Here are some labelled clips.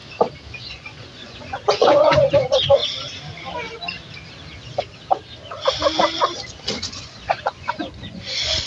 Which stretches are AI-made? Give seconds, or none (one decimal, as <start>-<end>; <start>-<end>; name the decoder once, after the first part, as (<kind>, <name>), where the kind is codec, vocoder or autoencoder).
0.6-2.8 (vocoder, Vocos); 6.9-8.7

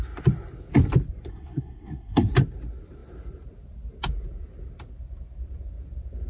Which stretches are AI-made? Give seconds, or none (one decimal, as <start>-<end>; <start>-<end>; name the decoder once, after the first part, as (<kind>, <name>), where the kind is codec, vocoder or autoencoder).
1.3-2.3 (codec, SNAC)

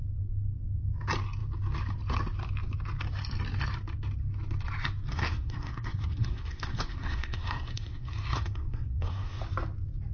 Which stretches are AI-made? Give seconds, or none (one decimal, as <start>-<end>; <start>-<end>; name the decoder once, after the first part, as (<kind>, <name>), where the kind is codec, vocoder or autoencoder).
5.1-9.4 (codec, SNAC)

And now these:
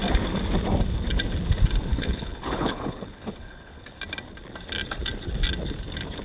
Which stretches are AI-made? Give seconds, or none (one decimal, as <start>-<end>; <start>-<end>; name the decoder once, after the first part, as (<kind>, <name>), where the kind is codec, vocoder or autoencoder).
1.9-4.0 (codec, HILCodec)